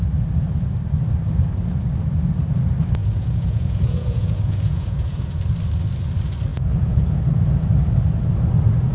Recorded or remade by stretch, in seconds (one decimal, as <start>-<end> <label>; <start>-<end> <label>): 0.0-3.0 recorded; 3.0-5.4 remade; 5.4-6.5 recorded; 6.5-7.2 remade; 7.2-8.9 recorded